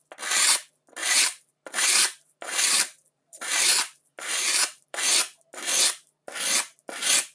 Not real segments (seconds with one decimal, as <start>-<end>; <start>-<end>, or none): 1.0-5.2